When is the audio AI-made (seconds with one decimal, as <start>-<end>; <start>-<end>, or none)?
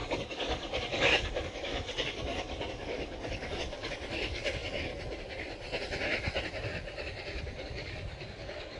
0.0-4.9; 7.4-8.8